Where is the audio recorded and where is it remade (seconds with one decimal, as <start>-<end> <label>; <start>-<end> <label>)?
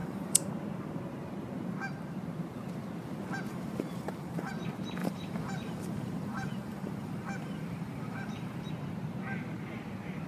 0.0-0.5 remade; 0.5-3.5 recorded; 3.5-4.5 remade; 4.5-5.0 recorded; 5.0-8.7 remade; 8.7-10.3 recorded